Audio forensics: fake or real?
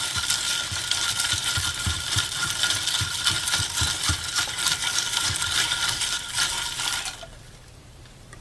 fake